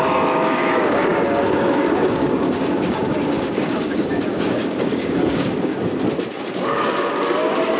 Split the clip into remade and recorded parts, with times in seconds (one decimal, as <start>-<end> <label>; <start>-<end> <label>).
0.0-5.7 remade; 5.7-6.5 recorded; 6.5-7.8 remade